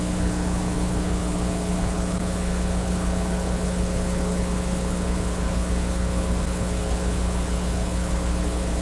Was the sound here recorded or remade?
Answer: remade